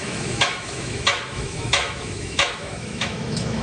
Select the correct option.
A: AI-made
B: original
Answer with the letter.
A